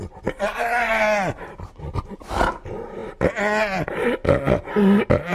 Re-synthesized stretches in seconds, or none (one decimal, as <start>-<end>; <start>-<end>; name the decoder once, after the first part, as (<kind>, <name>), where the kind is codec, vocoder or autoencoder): 0.0-0.9 (vocoder, BigVGAN v2)